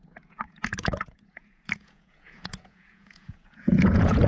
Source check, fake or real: fake